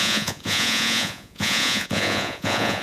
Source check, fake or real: fake